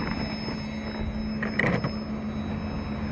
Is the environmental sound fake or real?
real